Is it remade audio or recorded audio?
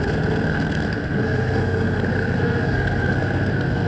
remade